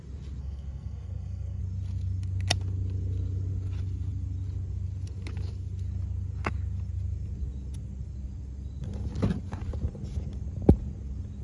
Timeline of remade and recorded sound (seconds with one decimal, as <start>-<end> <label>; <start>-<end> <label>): 0.0-0.4 recorded; 0.4-1.6 remade; 1.6-11.4 recorded